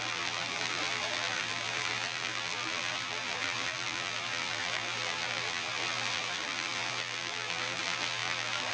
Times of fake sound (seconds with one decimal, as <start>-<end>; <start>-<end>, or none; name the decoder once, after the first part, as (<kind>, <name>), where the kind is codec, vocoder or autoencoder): 0.0-8.7 (vocoder, BigVGAN v2)